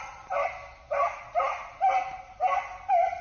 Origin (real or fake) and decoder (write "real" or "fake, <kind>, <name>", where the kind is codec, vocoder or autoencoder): real